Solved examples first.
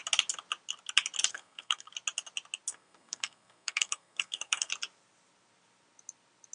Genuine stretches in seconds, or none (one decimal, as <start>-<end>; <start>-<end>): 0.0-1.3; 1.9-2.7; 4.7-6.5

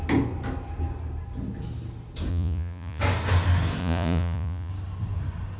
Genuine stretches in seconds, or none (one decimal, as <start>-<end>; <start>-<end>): 0.0-2.3; 3.0-3.8; 4.7-5.6

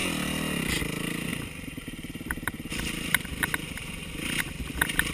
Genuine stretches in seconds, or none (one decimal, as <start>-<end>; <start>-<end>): 0.0-1.3; 4.4-5.1

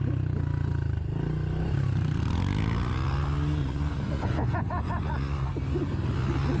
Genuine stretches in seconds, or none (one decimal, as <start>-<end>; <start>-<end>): 0.0-3.6; 5.5-6.6